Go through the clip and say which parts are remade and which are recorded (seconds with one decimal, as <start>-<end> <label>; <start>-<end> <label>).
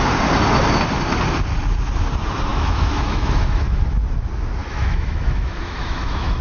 0.0-2.5 recorded; 2.5-3.8 remade; 3.8-4.6 recorded; 4.6-6.4 remade